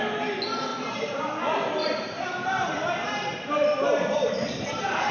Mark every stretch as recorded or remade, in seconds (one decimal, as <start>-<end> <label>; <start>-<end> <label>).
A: 0.0-0.7 recorded; 0.7-1.3 remade; 1.3-1.8 recorded; 1.8-5.1 remade